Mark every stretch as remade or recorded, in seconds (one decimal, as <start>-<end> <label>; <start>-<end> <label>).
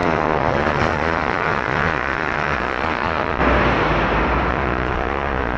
0.0-3.4 remade; 3.4-4.5 recorded; 4.5-5.6 remade